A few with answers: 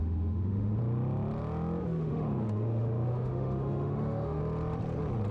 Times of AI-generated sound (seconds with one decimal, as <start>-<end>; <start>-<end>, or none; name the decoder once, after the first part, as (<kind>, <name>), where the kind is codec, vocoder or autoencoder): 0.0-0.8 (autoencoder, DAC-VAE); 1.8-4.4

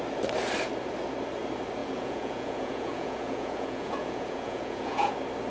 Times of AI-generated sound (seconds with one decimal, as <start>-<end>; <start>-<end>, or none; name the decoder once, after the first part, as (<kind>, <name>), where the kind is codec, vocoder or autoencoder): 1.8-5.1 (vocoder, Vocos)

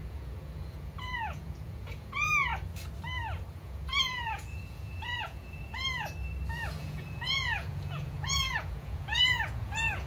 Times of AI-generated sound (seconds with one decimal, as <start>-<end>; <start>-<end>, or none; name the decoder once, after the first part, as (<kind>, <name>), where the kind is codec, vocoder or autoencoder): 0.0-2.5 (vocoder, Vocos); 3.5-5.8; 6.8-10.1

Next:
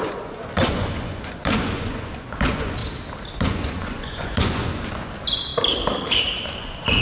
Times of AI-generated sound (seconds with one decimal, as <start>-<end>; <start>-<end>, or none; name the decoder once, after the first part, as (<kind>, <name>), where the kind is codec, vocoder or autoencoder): 0.0-2.8 (vocoder, Vocos); 3.3-5.5; 6.4-7.0

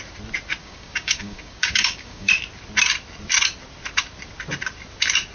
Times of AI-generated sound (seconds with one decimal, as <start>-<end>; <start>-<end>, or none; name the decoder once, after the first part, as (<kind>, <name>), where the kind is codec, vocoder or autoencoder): 0.6-2.3 (codec, DAC)